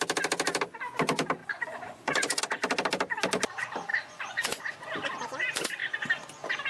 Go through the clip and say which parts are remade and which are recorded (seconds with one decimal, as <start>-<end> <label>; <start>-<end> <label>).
0.0-1.4 recorded; 1.4-2.4 remade; 2.4-3.9 recorded; 3.9-4.6 remade; 4.6-6.7 recorded